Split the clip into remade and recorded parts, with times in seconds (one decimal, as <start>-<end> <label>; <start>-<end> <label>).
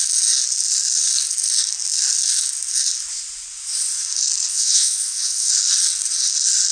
0.0-4.5 recorded; 4.5-5.5 remade; 5.5-6.7 recorded